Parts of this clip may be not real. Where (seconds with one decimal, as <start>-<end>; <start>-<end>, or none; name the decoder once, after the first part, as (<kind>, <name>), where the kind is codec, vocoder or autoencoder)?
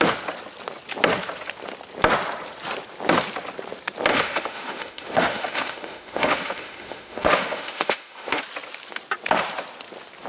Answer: 4.1-8.4 (autoencoder, DAC-VAE)